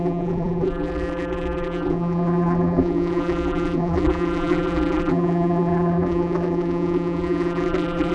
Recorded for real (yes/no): no